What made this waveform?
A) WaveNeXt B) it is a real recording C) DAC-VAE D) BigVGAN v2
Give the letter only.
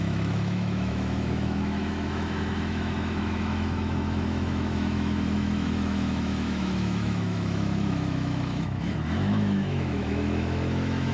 C